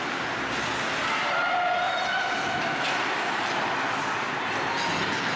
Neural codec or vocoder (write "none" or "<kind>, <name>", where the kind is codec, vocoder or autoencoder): none